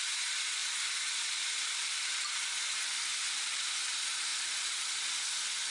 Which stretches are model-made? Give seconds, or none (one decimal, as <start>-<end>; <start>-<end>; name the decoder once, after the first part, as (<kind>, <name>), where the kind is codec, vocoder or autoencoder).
none